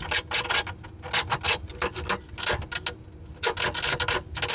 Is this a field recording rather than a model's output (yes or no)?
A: yes